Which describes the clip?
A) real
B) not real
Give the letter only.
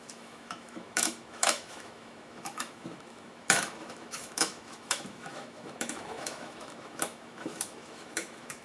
B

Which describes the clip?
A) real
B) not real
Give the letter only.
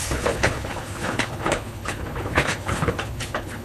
B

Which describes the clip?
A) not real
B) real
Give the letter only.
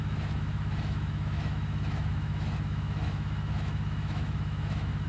A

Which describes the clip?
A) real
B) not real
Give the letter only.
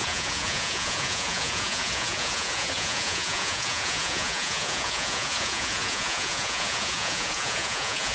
B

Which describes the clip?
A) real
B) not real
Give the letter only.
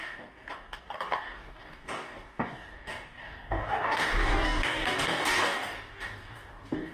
B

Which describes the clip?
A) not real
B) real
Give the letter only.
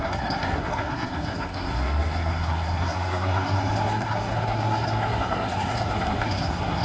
A